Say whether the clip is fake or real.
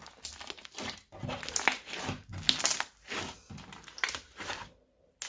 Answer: real